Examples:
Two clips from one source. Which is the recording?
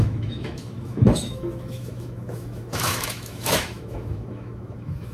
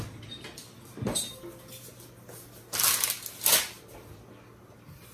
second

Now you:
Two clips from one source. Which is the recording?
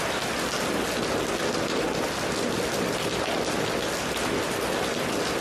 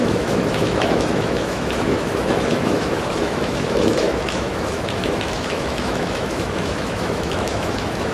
first